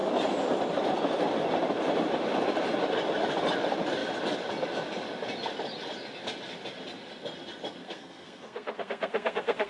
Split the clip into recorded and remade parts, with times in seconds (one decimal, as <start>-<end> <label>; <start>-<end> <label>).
0.0-7.8 recorded; 7.8-9.7 remade